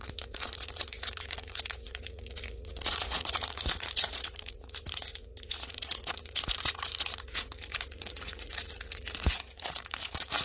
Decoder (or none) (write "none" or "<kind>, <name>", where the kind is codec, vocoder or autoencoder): vocoder, Vocos